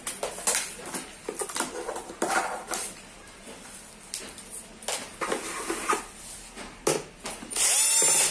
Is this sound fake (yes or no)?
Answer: no